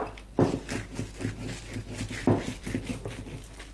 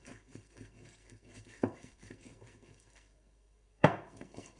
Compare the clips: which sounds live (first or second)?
first